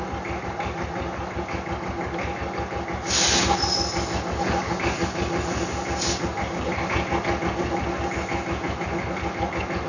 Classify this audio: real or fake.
real